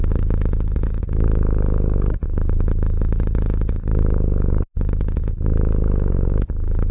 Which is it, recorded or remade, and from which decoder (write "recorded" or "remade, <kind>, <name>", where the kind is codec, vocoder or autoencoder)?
recorded